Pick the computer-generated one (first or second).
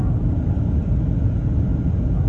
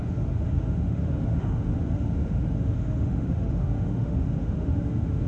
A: second